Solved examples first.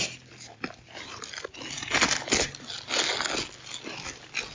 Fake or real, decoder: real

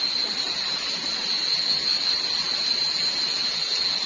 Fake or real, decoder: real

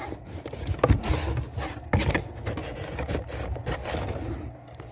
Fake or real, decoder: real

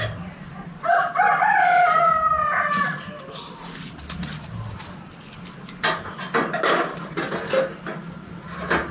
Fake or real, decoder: real